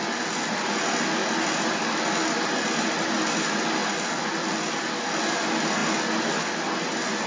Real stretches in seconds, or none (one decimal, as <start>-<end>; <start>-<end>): 0.0-7.3